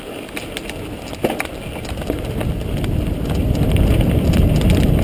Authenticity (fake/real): real